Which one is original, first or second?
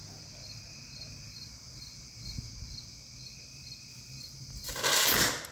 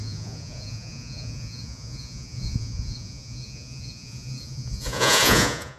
first